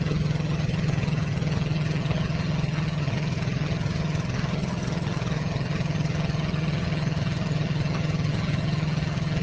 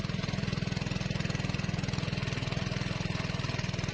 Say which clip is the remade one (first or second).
first